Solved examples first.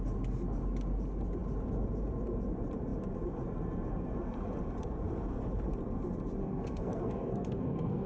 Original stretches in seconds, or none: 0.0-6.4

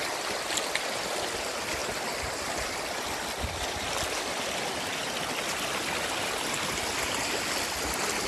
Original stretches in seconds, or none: 0.0-8.3

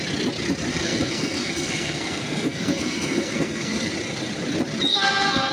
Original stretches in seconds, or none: 0.0-0.7; 3.9-4.9